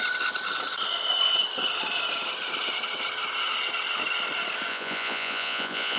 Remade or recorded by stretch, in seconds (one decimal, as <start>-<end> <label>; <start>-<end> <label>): 0.0-4.7 recorded; 4.7-6.0 remade

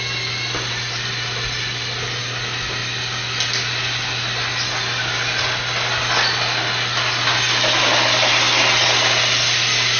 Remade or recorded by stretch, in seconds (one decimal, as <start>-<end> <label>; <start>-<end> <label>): 0.0-10.0 recorded

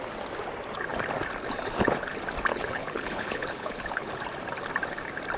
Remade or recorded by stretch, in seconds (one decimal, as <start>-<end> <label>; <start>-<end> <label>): 0.0-2.5 recorded; 2.5-4.1 remade; 4.1-5.4 recorded